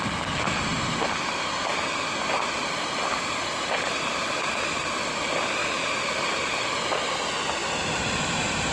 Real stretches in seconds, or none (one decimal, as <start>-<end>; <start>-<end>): 0.0-8.7

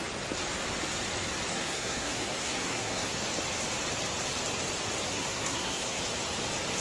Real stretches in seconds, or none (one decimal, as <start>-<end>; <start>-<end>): 0.0-1.5; 3.2-5.1; 6.0-6.8

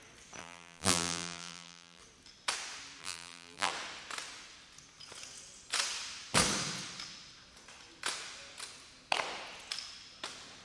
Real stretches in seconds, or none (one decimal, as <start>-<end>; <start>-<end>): 0.0-0.4; 2.0-3.0; 3.7-10.6

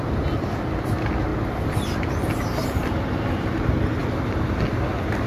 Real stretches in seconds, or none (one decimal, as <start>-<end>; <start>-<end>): 0.0-1.3; 3.2-4.0; 4.6-5.3

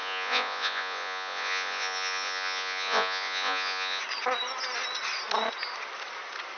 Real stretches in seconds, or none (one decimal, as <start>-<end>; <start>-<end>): 4.0-6.6

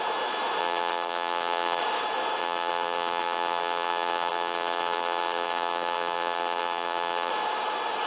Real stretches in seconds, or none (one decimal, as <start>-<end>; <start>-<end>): 0.0-0.6; 1.8-2.4; 7.3-8.1

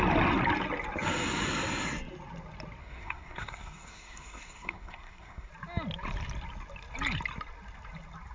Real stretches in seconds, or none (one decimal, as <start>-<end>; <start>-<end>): 0.0-2.8; 5.5-8.3

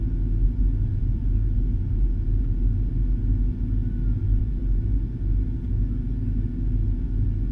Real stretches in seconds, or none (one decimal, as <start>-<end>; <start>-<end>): 0.0-0.9; 2.9-4.4; 5.7-7.5